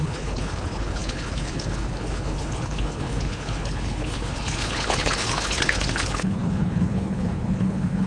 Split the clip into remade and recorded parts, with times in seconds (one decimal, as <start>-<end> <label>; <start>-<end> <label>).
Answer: 0.0-8.1 remade